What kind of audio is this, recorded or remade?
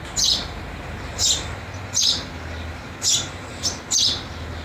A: recorded